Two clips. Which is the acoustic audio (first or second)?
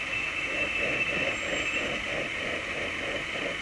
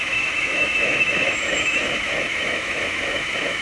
first